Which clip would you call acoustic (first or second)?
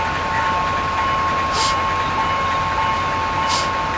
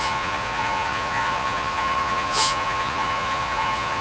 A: first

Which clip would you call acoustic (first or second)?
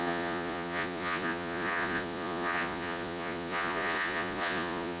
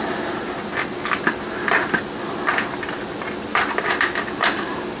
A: second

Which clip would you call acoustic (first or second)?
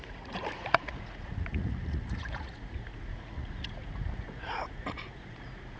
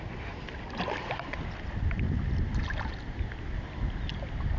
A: second